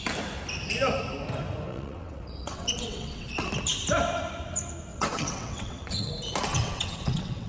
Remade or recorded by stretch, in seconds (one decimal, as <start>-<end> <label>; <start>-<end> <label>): 0.0-1.7 recorded; 1.7-3.5 remade; 3.5-4.9 recorded; 4.9-6.1 remade; 6.1-6.5 recorded; 6.5-7.5 remade

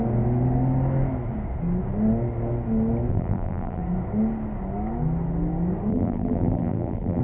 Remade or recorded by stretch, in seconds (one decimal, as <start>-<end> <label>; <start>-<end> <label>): 0.0-3.1 recorded; 3.1-3.8 remade; 3.8-5.9 recorded; 5.9-7.2 remade

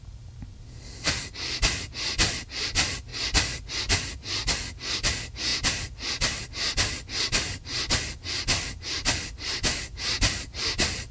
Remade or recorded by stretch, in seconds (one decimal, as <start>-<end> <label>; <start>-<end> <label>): 0.0-11.1 recorded

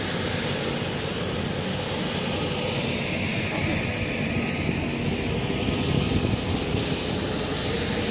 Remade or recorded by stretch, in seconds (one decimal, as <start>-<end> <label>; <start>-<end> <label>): 0.0-8.1 recorded

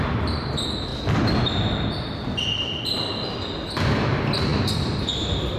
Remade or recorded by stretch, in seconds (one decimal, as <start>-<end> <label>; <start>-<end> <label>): 0.0-0.9 recorded; 0.9-1.6 remade; 1.6-2.2 recorded; 2.2-3.6 remade; 3.6-5.6 recorded

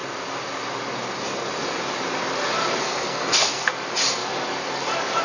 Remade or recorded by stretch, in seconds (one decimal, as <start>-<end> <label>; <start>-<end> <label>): 0.0-2.8 recorded; 2.8-3.7 remade; 3.7-5.2 recorded

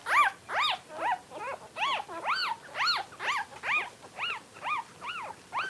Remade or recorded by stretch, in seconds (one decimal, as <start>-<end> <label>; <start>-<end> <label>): 0.0-5.7 recorded